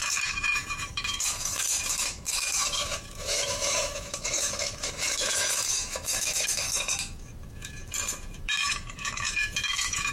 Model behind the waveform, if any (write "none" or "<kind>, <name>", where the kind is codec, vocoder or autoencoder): autoencoder, DAC-VAE